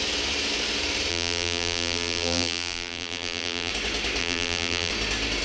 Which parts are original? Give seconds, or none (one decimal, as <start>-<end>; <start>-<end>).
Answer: 0.0-1.1; 3.7-4.2; 4.9-5.4